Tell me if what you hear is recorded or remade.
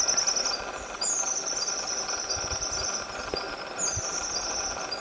recorded